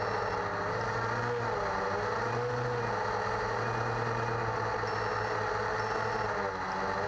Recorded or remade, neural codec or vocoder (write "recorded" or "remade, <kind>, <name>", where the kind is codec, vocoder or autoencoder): recorded